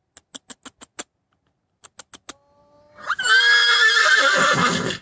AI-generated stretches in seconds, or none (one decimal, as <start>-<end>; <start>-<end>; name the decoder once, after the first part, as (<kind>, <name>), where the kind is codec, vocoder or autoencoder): 4.0-5.0 (codec, SNAC)